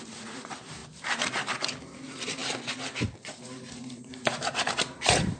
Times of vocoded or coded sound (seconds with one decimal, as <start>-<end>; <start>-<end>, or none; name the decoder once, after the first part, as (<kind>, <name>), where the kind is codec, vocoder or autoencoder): 0.0-2.4 (vocoder, BigVGAN v2); 4.9-5.4